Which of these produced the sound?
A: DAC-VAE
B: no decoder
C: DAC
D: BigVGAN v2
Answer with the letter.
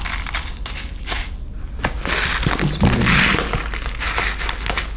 B